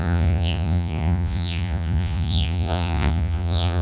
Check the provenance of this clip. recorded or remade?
remade